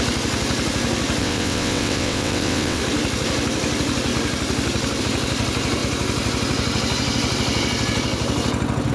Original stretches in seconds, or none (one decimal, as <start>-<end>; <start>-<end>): 0.0-1.2; 2.8-8.9